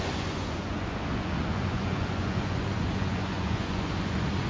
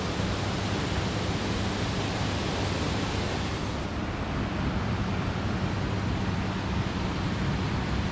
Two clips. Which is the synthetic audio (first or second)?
first